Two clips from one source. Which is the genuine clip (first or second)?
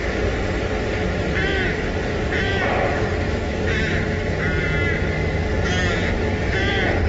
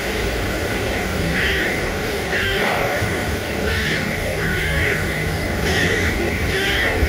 first